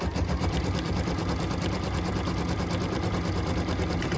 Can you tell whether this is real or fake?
fake